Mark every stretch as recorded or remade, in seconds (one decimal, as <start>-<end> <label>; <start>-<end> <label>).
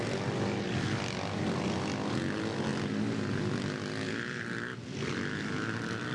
0.0-6.1 recorded